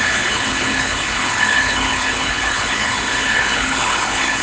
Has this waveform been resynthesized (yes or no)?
yes